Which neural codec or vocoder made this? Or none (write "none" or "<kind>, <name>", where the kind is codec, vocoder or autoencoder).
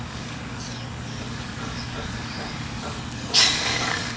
codec, DAC